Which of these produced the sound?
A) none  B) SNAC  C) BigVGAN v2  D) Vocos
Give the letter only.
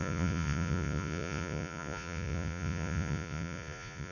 D